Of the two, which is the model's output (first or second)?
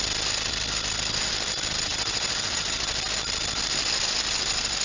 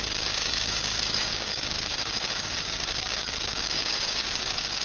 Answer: second